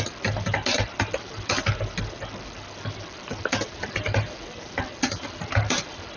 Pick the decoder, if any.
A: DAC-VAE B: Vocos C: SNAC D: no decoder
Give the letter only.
D